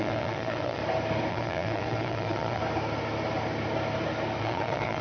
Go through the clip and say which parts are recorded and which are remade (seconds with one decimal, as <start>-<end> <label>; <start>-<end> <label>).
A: 0.0-0.8 remade; 0.8-1.3 recorded; 1.3-2.6 remade; 2.6-4.4 recorded; 4.4-5.0 remade

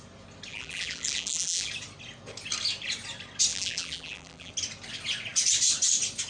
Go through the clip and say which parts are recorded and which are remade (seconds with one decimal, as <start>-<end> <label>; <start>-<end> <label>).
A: 0.0-0.5 recorded; 0.5-1.7 remade; 1.7-3.5 recorded; 3.5-4.5 remade; 4.5-6.3 recorded

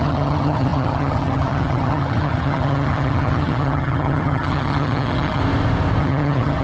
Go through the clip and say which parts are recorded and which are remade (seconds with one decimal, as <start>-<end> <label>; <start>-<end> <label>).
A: 0.0-5.4 remade; 5.4-6.0 recorded; 6.0-6.6 remade

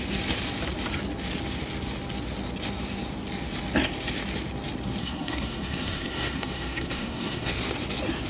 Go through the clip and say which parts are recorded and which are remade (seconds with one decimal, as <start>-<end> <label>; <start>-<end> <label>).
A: 0.0-5.0 recorded; 5.0-7.5 remade; 7.5-8.3 recorded

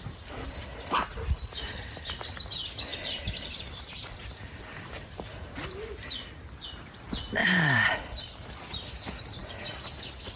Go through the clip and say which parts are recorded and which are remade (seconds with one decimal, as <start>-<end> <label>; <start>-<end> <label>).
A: 0.0-2.9 recorded; 2.9-5.9 remade; 5.9-7.4 recorded; 7.4-7.9 remade; 7.9-10.4 recorded

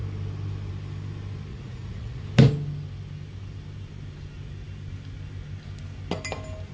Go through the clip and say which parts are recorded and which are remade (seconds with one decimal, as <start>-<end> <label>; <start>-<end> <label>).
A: 0.0-1.5 recorded; 1.5-2.2 remade; 2.2-6.7 recorded

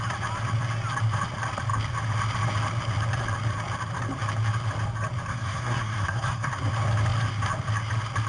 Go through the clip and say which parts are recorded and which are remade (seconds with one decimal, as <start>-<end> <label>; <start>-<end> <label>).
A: 0.0-5.3 recorded; 5.3-6.5 remade; 6.5-8.3 recorded